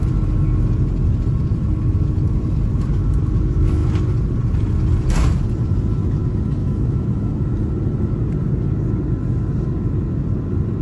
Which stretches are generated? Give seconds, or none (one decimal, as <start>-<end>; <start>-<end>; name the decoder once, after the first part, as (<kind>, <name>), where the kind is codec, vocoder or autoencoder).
6.6-7.4 (autoencoder, DAC-VAE)

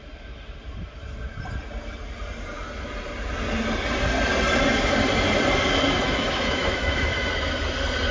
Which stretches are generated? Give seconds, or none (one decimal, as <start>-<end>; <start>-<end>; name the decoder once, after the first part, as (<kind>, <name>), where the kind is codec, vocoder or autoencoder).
6.0-7.3 (autoencoder, DAC-VAE)